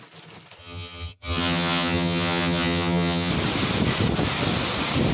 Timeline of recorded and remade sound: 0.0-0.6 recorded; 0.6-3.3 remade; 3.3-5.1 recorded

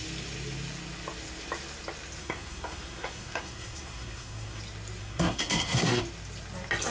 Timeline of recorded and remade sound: 0.0-2.2 recorded; 2.2-4.6 remade; 4.6-5.0 recorded; 5.0-6.0 remade; 6.0-6.9 recorded

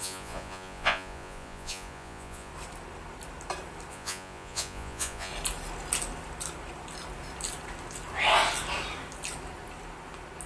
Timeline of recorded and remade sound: 0.0-2.5 remade; 2.5-3.9 recorded; 3.9-5.3 remade; 5.3-10.5 recorded

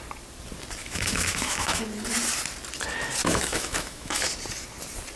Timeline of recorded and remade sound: 0.0-0.8 recorded; 0.8-1.8 remade; 1.8-3.2 recorded; 3.2-4.3 remade; 4.3-5.2 recorded

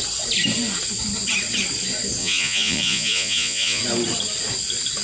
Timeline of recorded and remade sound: 0.0-2.2 recorded; 2.2-3.8 remade; 3.8-5.0 recorded

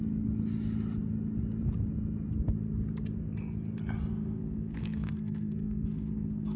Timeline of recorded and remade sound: 0.0-4.1 recorded; 4.1-6.6 remade

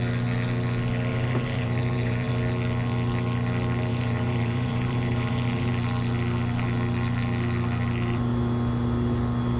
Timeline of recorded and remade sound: 0.0-1.1 recorded; 1.1-2.3 remade; 2.3-3.9 recorded; 3.9-5.7 remade; 5.7-9.6 recorded

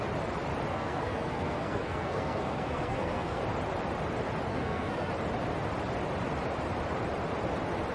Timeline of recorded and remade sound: 0.0-0.7 recorded; 0.7-3.4 remade; 3.4-4.5 recorded; 4.5-5.1 remade; 5.1-7.9 recorded